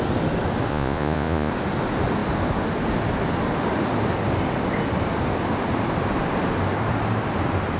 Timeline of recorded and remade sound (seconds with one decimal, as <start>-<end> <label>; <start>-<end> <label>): 0.0-0.7 recorded; 0.7-1.5 remade; 1.5-7.8 recorded